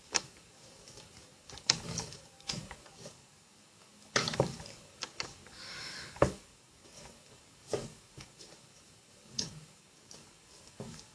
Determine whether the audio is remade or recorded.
remade